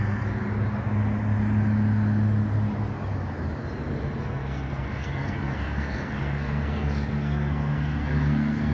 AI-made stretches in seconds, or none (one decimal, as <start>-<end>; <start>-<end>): 0.0-0.4; 4.2-8.7